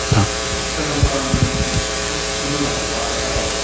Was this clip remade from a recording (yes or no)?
yes